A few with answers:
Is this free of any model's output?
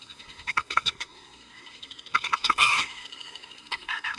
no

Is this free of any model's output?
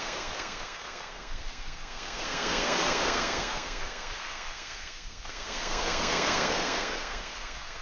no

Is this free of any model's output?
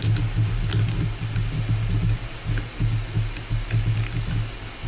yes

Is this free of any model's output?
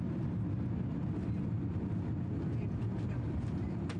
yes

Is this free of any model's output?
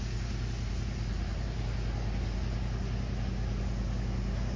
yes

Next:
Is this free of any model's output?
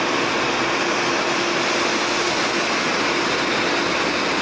yes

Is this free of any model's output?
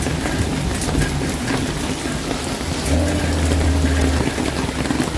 yes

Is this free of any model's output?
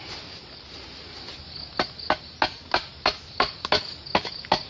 yes